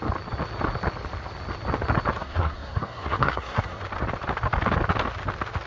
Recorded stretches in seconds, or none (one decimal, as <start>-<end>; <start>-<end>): 0.0-2.2; 3.8-5.7

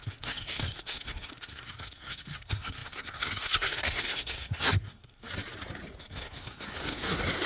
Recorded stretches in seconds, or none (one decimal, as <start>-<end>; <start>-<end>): 5.3-6.0

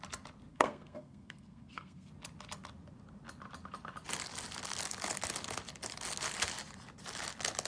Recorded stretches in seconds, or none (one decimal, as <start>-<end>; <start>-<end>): 0.0-0.5; 2.1-7.7